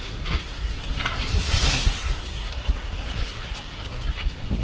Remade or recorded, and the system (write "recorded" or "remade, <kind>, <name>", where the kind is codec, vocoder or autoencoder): remade, codec, SNAC